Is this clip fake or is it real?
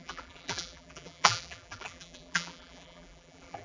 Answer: fake